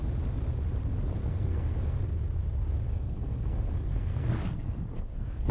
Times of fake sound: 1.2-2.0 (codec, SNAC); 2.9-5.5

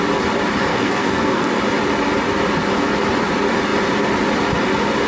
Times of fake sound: 0.7-1.6 (codec, SNAC)